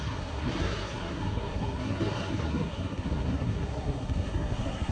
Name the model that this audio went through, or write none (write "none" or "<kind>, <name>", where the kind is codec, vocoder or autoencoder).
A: codec, SNAC